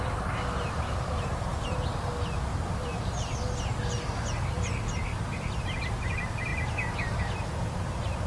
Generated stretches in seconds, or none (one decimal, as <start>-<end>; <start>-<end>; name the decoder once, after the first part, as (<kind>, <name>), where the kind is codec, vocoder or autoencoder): none